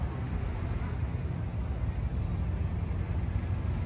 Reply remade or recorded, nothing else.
recorded